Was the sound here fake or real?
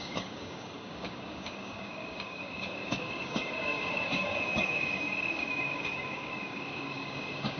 fake